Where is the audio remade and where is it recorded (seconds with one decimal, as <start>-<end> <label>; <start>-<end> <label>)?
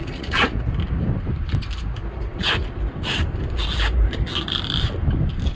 0.0-0.7 remade; 0.7-5.5 recorded